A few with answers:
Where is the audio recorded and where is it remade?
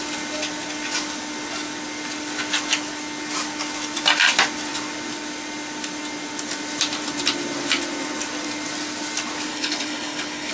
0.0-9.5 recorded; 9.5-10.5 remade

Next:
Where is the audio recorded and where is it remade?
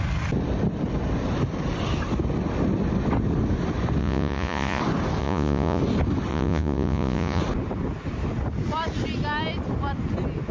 0.0-4.0 recorded; 4.0-4.8 remade; 4.8-5.2 recorded; 5.2-5.8 remade; 5.8-6.3 recorded; 6.3-7.4 remade; 7.4-10.5 recorded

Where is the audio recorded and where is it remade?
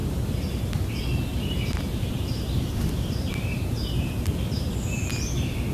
0.0-1.3 recorded; 1.3-4.7 remade; 4.7-5.7 recorded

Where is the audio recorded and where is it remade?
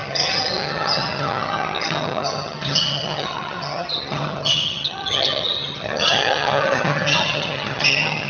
0.0-8.3 remade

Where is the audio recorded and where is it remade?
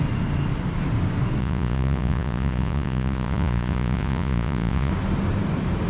0.0-1.4 recorded; 1.4-4.9 remade; 4.9-5.9 recorded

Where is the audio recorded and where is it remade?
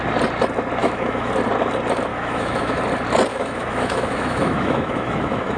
0.0-0.8 recorded; 0.8-1.3 remade; 1.3-2.1 recorded; 2.1-2.8 remade; 2.8-3.3 recorded; 3.3-5.6 remade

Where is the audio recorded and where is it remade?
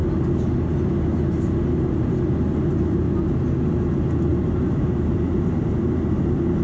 0.0-4.3 recorded; 4.3-5.7 remade; 5.7-6.6 recorded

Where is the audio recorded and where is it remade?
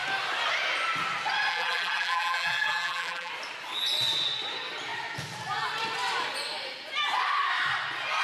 0.0-1.5 recorded; 1.5-3.3 remade; 3.3-8.2 recorded